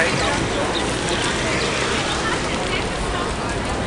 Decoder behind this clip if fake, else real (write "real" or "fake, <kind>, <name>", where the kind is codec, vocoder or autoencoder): real